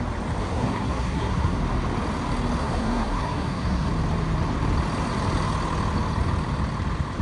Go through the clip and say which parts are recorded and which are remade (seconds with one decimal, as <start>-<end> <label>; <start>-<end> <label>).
0.0-0.4 recorded; 0.4-1.6 remade; 1.6-2.6 recorded; 2.6-3.9 remade; 3.9-7.2 recorded